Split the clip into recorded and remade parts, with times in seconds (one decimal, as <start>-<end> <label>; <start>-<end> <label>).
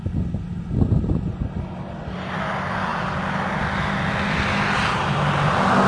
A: 0.0-5.9 recorded